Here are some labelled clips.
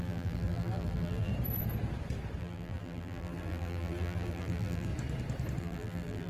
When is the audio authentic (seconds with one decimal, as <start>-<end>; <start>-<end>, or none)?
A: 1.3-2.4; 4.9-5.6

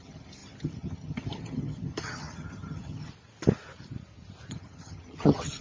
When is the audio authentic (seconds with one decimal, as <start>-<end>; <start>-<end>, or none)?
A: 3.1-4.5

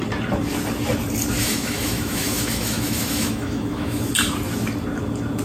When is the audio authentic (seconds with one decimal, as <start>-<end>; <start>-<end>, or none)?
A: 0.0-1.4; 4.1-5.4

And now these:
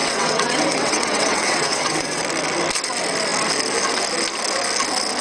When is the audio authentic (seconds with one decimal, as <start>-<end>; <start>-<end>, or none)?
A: 2.2-5.2

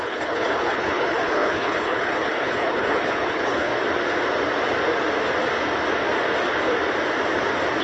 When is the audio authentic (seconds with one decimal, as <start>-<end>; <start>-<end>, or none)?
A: 3.7-7.8